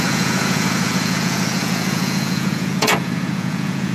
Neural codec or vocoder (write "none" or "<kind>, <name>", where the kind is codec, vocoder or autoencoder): vocoder, Vocos